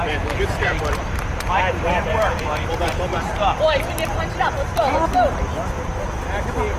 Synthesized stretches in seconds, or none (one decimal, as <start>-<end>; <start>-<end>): 0.0-0.7; 1.7-3.1; 4.5-5.9